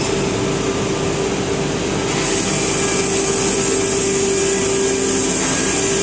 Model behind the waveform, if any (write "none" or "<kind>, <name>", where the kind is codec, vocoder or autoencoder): none